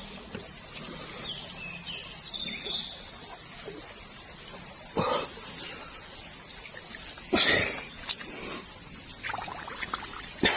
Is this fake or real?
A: real